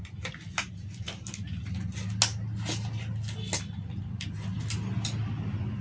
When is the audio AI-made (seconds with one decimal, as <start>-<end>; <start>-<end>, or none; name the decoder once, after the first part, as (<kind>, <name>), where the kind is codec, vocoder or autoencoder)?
none